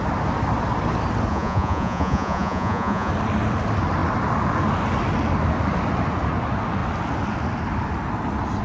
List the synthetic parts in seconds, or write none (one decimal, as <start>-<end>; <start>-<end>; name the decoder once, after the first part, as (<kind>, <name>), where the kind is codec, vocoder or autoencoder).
1.3-3.1 (vocoder, Vocos)